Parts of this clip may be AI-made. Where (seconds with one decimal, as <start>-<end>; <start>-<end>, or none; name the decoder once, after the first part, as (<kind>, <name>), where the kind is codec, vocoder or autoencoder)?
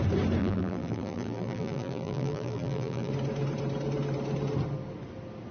0.4-3.1 (vocoder, BigVGAN v2)